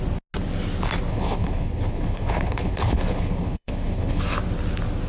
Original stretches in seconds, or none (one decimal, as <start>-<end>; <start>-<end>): 0.0-1.1; 4.2-5.1